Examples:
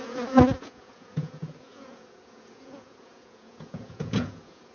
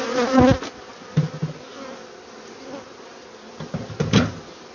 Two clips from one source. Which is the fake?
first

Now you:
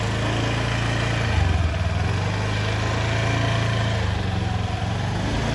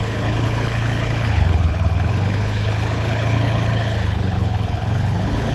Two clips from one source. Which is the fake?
second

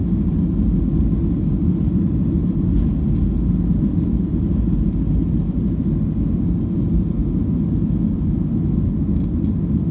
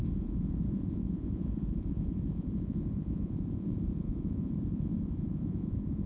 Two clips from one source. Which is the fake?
second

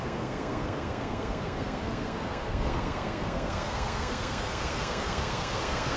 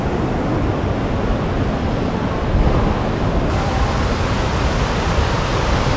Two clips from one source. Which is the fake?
first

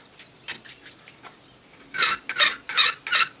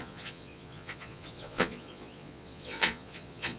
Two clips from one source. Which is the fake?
second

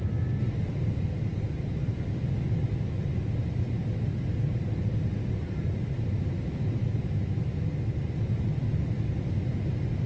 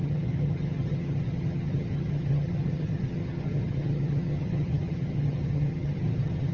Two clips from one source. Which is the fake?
second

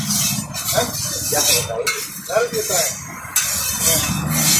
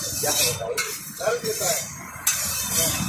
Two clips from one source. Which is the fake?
second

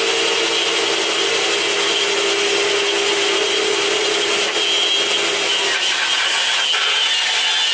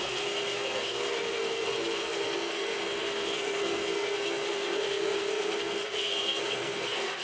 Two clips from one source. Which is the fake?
second